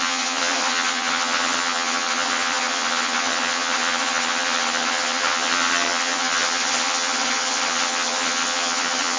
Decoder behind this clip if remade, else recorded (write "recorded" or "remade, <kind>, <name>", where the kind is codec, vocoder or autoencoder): remade, vocoder, HiFi-GAN